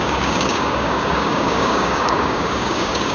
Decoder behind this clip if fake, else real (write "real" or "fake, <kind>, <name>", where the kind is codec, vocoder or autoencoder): fake, codec, DAC